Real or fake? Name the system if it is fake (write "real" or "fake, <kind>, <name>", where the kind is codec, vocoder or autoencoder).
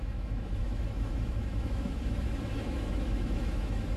fake, autoencoder, DAC-VAE